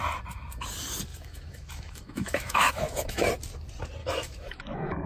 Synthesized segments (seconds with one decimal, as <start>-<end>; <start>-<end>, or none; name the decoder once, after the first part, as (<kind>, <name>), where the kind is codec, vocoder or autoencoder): 1.1-3.3 (autoencoder, DAC-VAE); 4.0-5.1